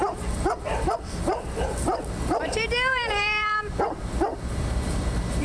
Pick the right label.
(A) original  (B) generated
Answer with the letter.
B